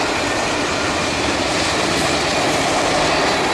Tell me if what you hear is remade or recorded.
recorded